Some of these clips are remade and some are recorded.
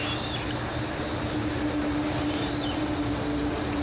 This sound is recorded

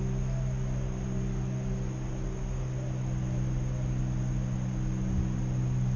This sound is recorded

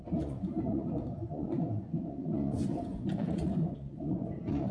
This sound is remade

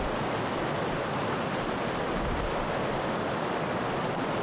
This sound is recorded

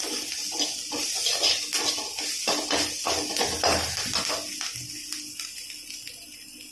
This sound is recorded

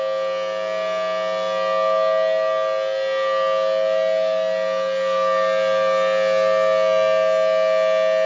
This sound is recorded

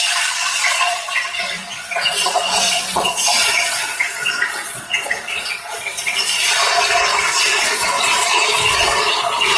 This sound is remade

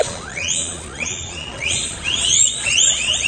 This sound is remade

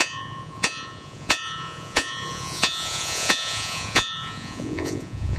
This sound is remade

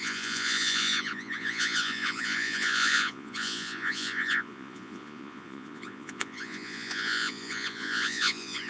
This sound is remade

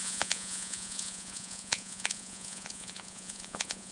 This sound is remade